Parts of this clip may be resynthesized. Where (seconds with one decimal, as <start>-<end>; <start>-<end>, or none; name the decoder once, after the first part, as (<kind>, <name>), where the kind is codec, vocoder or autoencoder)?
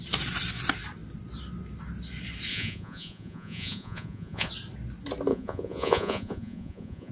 2.5-4.5 (vocoder, Vocos); 5.3-7.1